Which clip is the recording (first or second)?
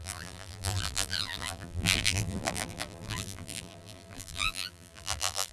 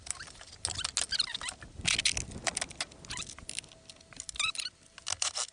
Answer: second